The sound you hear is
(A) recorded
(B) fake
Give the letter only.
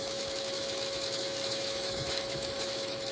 B